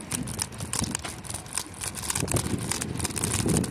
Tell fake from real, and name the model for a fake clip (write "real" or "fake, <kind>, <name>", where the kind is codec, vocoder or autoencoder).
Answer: real